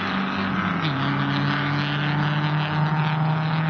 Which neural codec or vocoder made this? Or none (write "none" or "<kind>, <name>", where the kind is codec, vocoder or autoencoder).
none